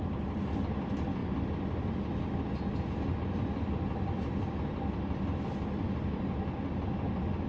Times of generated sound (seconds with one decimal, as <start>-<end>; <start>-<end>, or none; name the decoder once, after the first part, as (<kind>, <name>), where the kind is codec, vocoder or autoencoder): none